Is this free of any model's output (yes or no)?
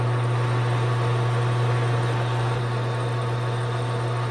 yes